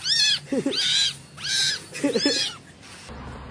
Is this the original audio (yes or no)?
yes